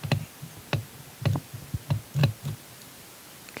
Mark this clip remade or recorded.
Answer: recorded